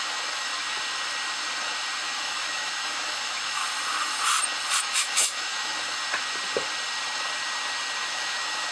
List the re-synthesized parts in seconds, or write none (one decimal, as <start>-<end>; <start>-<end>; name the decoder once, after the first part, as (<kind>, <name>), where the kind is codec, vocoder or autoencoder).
0.0-0.5 (autoencoder, DAC-VAE); 2.0-3.6; 4.8-6.0; 8.0-8.7